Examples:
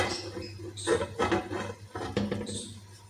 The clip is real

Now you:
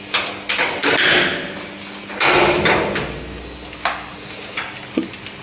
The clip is real